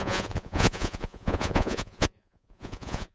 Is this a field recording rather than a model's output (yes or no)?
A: no